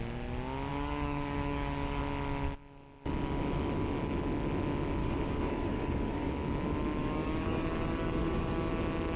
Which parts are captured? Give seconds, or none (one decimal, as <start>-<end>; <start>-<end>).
0.0-0.7; 2.0-5.0; 6.3-7.0; 8.7-9.2